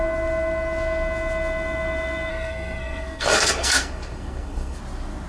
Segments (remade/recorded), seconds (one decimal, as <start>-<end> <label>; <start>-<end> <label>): 0.0-2.3 recorded; 2.3-4.8 remade; 4.8-5.3 recorded